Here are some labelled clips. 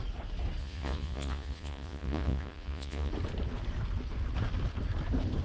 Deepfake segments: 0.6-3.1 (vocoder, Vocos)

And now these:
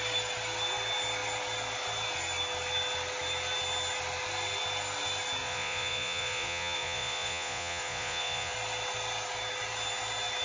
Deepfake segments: 5.4-8.5 (vocoder, Vocos)